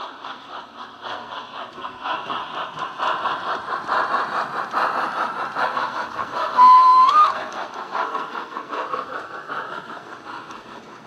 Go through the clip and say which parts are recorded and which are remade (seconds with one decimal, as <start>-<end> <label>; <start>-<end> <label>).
0.0-2.4 remade; 2.4-5.6 recorded; 5.6-11.1 remade